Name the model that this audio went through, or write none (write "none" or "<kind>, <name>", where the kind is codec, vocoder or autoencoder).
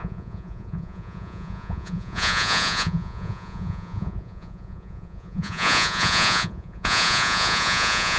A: vocoder, Vocos